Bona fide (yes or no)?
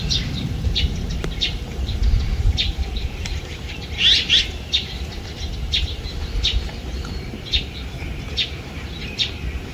no